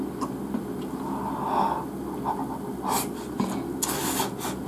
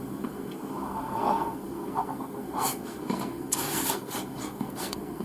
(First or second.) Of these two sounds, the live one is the first